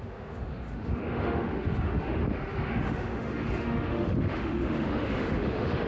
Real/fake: fake